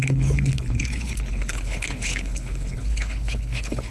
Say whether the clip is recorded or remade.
remade